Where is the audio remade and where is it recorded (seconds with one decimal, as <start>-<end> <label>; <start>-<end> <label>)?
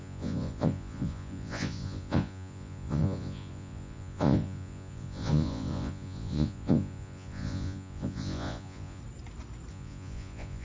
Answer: 0.0-9.0 remade; 9.0-9.7 recorded; 9.7-10.6 remade